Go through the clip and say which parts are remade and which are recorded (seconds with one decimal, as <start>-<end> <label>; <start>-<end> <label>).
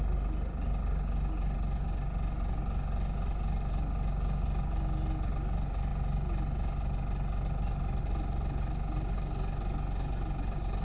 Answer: 0.0-10.8 recorded